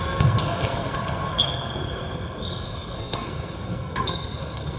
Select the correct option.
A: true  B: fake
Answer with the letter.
B